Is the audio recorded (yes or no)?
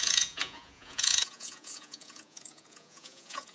no